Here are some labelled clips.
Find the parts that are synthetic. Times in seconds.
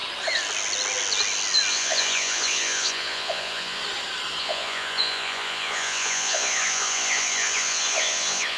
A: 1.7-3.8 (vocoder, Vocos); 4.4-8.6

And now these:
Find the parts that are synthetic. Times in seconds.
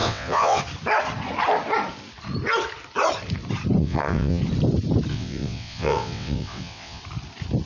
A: 0.0-0.6 (vocoder, WaveNeXt); 3.8-4.4; 5.1-7.0